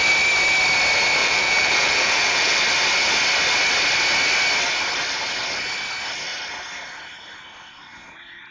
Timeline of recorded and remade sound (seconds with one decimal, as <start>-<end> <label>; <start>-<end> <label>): 0.0-1.2 recorded; 1.2-2.6 remade; 2.6-8.5 recorded